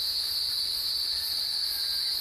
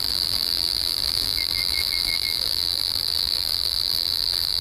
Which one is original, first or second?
first